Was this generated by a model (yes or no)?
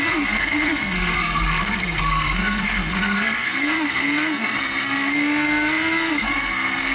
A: yes